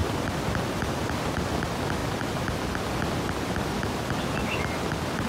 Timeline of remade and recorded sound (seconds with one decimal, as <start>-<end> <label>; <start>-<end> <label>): 0.0-5.3 recorded

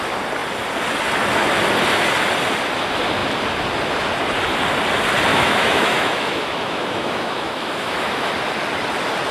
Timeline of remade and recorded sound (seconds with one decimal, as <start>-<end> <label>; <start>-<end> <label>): 0.0-5.3 recorded; 5.3-8.3 remade; 8.3-9.3 recorded

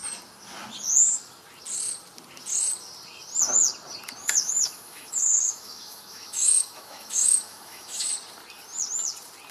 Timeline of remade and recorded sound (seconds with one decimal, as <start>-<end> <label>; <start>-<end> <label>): 0.0-4.2 recorded; 4.2-8.1 remade; 8.1-9.5 recorded

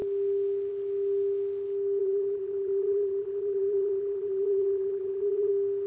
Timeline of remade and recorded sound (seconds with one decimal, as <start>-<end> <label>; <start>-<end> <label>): 0.0-2.0 recorded; 2.0-5.5 remade; 5.5-5.9 recorded

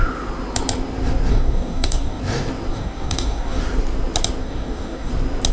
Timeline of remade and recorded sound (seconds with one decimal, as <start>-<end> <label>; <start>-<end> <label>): 0.0-1.3 recorded; 1.3-2.2 remade; 2.2-2.7 recorded; 2.7-3.6 remade; 3.6-4.4 recorded; 4.4-5.1 remade; 5.1-5.5 recorded

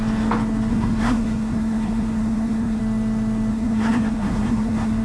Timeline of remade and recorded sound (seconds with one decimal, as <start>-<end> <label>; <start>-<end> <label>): 0.0-0.7 recorded; 0.7-2.8 remade; 2.8-3.5 recorded; 3.5-5.0 remade

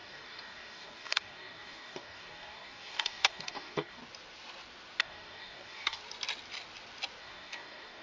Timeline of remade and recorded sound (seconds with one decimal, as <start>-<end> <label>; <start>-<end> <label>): 0.0-4.0 remade; 4.0-5.0 recorded; 5.0-6.0 remade; 6.0-7.2 recorded; 7.2-8.0 remade

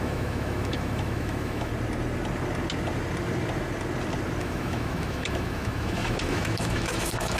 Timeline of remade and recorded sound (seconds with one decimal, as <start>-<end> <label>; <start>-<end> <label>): 0.0-1.7 remade; 1.7-4.4 recorded; 4.4-7.4 remade